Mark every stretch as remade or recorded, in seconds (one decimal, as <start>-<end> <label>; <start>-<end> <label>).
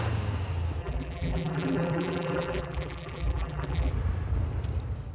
0.0-0.8 recorded; 0.8-3.9 remade; 3.9-5.1 recorded